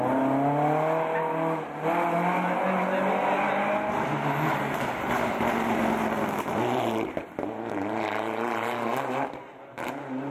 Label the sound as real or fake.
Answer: real